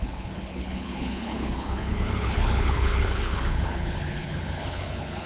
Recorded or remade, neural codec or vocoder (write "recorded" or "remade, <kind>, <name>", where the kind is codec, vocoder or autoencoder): remade, codec, HILCodec